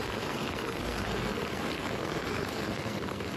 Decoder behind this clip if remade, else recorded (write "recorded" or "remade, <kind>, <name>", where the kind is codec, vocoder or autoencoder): remade, codec, SNAC